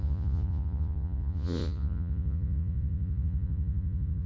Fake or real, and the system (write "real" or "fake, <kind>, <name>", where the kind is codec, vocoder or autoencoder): fake, vocoder, Vocos